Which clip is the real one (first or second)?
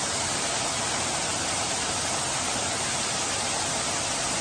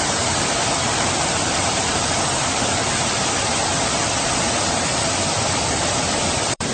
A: first